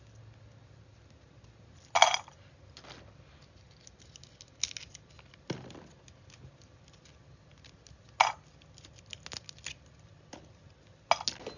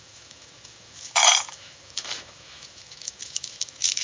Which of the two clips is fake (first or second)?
second